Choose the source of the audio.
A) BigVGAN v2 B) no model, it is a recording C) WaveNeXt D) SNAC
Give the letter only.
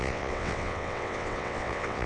C